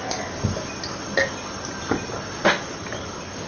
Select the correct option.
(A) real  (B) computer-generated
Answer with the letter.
A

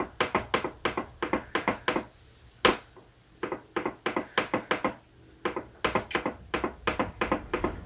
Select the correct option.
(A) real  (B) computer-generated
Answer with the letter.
A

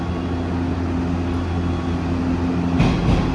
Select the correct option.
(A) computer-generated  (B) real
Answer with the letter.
B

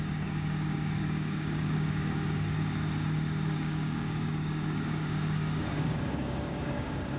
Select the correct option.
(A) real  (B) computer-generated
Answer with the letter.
B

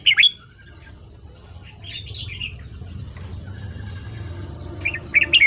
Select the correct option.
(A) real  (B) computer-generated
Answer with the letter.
A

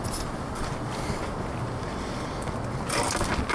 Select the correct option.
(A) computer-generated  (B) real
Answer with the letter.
B